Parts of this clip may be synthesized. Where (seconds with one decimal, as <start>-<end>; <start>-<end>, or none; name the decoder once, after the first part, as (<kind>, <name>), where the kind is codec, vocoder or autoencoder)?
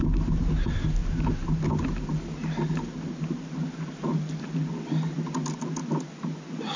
none